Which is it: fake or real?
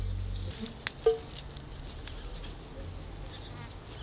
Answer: real